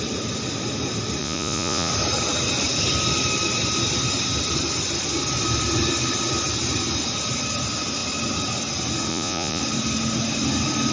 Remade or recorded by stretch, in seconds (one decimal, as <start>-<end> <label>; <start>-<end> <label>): 0.0-1.2 recorded; 1.2-1.9 remade; 1.9-9.1 recorded; 9.1-9.6 remade; 9.6-10.9 recorded